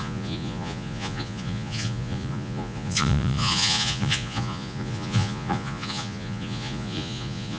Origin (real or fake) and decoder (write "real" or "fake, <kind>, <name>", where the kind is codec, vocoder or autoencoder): fake, vocoder, Vocos